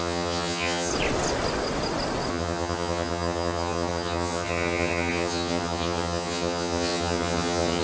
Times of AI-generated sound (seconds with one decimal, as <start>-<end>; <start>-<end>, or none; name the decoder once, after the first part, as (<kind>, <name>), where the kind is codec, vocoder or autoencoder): 0.0-0.9 (vocoder, HiFi-GAN); 2.3-7.8